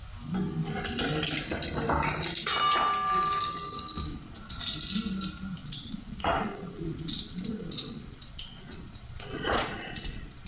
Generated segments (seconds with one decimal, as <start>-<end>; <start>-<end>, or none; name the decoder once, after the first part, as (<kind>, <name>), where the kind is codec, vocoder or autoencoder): 4.1-4.6 (vocoder, Vocos); 5.6-10.5